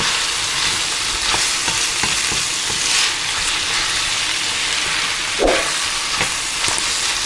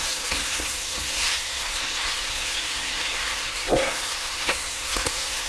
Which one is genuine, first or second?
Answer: first